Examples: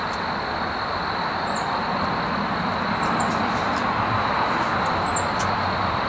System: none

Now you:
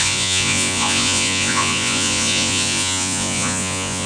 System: vocoder, Vocos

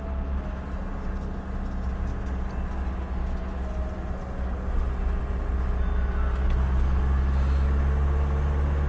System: none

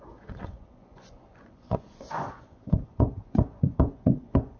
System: vocoder, Vocos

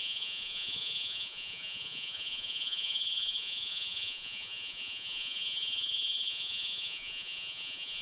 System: vocoder, Vocos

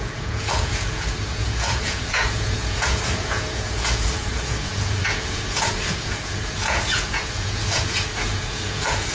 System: vocoder, Vocos